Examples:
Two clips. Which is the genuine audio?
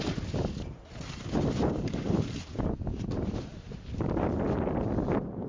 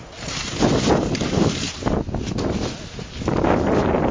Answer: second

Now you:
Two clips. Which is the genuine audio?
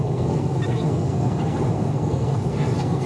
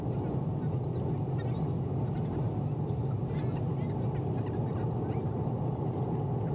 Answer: second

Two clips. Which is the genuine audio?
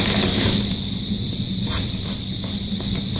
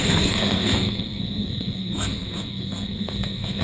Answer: first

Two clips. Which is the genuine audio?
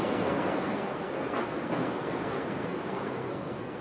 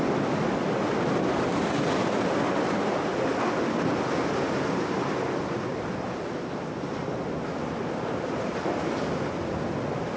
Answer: second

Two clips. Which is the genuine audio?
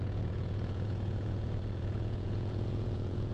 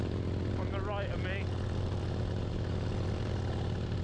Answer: second